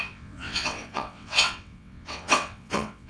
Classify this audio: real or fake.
fake